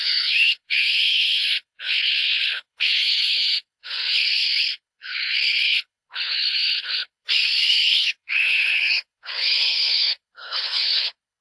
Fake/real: fake